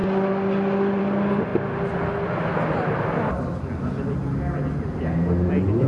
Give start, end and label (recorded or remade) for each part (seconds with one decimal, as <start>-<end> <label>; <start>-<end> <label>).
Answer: 0.0-5.9 recorded